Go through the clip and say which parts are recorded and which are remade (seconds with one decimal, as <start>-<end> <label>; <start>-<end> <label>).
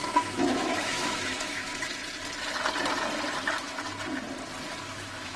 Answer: 0.0-1.7 remade; 1.7-4.9 recorded; 4.9-5.4 remade